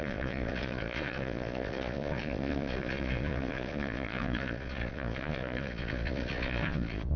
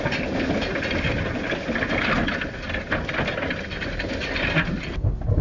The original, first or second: second